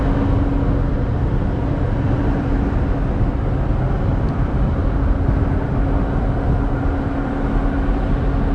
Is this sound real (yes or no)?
yes